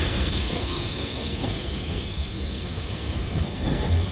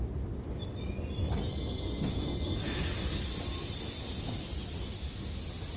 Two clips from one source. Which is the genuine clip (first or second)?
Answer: second